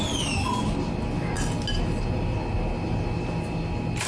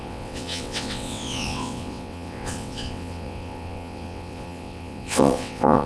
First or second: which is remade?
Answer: second